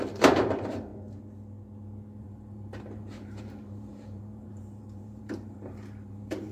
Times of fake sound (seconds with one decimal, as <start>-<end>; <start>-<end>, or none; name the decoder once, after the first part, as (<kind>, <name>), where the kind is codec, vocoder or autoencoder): 0.0-0.9 (vocoder, BigVGAN v2); 2.2-6.5